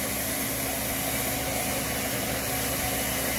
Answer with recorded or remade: recorded